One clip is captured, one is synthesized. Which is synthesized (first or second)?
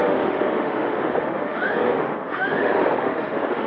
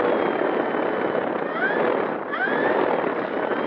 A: first